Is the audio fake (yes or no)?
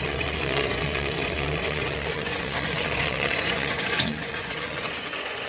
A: yes